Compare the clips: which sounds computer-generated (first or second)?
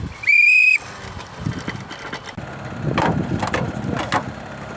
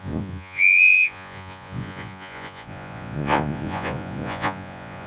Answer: second